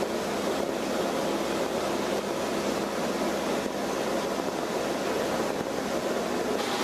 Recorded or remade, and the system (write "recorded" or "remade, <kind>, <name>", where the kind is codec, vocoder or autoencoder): recorded